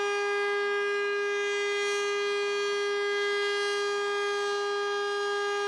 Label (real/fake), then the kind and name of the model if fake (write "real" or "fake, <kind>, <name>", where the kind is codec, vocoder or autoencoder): real